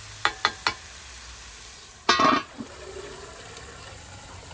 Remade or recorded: recorded